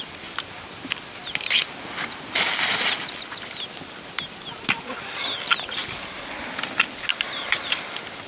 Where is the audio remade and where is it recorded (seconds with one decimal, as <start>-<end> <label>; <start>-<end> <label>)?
0.0-8.3 recorded